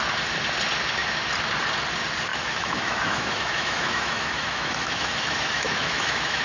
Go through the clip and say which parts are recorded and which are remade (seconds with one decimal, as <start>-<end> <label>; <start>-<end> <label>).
0.0-2.3 recorded; 2.3-6.4 remade